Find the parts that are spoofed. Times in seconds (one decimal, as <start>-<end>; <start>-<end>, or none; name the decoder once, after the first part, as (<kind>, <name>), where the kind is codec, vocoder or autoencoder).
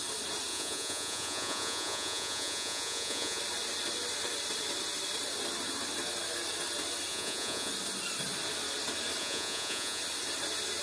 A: 0.5-3.4 (vocoder, Vocos); 7.1-7.7; 9.2-10.0